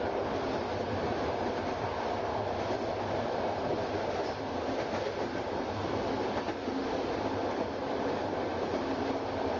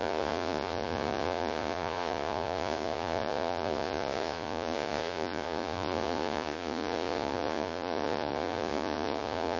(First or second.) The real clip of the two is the first